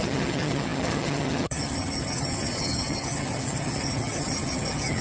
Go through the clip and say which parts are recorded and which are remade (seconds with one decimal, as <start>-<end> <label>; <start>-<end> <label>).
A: 0.0-5.0 remade